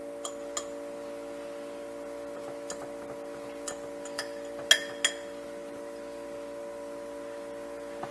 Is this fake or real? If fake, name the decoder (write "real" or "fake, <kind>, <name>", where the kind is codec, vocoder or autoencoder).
real